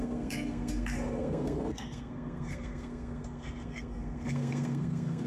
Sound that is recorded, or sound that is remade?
remade